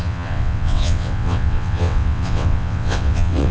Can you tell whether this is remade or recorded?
remade